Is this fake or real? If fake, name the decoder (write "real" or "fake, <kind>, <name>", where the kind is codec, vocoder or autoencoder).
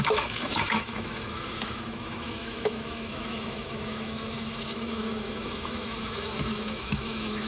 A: fake, autoencoder, DAC-VAE